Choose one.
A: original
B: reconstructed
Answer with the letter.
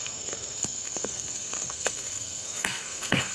B